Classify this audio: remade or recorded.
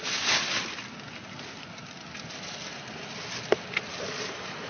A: recorded